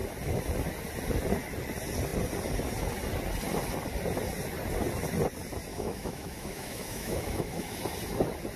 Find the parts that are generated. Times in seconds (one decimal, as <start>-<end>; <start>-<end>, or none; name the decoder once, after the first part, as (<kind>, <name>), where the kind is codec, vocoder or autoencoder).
5.7-7.8 (autoencoder, DAC-VAE)